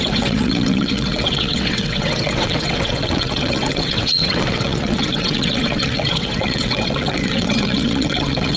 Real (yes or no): no